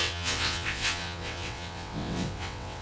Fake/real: fake